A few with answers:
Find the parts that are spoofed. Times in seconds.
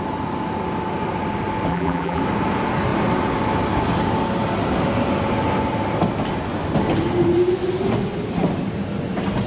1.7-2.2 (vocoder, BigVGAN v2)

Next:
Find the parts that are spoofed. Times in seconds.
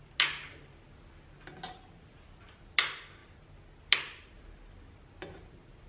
none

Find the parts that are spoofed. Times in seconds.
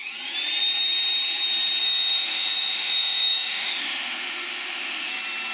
1.8-5.1 (autoencoder, DAC-VAE)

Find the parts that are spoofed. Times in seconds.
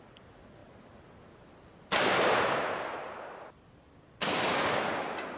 none